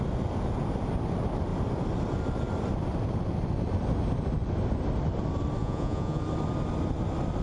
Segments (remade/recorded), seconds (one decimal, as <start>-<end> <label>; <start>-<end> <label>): 0.0-5.6 recorded; 5.6-6.2 remade; 6.2-7.4 recorded